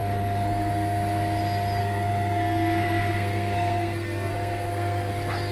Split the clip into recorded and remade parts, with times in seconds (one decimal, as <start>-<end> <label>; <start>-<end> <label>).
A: 0.0-0.7 remade; 0.7-1.8 recorded; 1.8-5.1 remade; 5.1-5.5 recorded